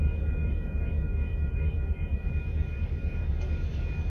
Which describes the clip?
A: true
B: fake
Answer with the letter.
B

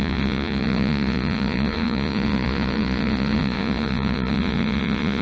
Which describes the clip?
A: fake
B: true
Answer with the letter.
A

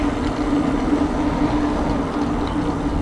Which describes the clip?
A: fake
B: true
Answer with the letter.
B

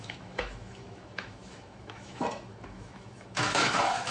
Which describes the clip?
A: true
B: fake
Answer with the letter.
B